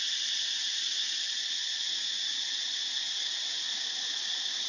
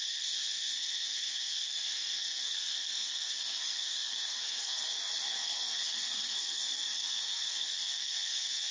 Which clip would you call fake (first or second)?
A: second